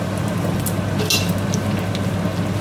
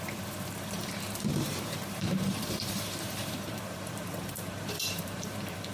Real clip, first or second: first